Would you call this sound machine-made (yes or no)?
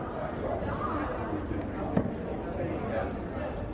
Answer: no